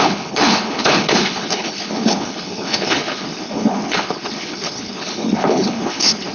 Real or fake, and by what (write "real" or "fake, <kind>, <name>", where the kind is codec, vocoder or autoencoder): fake, codec, HILCodec